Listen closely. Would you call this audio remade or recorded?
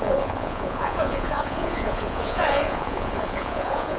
remade